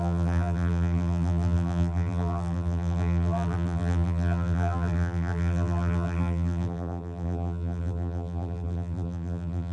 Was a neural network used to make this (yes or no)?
yes